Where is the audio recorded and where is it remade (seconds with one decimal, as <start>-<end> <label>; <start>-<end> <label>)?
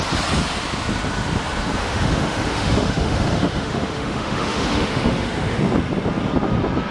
0.0-1.8 recorded; 1.8-5.6 remade; 5.6-6.9 recorded